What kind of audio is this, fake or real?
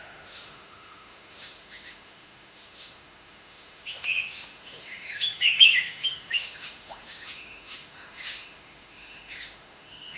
fake